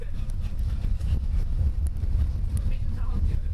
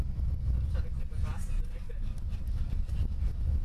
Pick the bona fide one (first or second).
second